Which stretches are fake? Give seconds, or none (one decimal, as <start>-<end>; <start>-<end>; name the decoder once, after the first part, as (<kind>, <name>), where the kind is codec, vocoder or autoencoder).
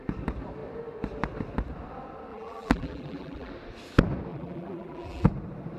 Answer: 2.3-3.5 (vocoder, BigVGAN v2); 4.3-5.3